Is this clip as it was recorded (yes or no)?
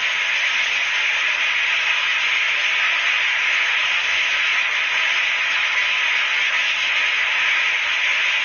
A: yes